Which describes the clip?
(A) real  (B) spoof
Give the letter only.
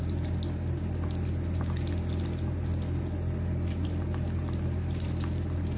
A